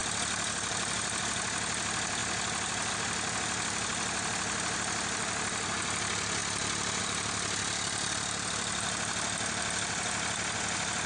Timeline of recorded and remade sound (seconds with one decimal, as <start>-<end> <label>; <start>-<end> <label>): 0.0-11.1 recorded